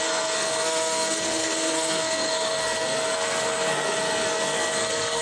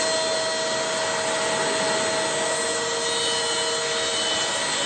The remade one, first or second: first